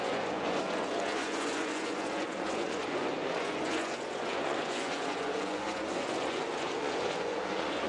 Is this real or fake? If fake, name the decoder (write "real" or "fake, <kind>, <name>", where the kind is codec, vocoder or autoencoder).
fake, vocoder, Vocos